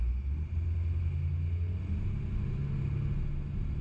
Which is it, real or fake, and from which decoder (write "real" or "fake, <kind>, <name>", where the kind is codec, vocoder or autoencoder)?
real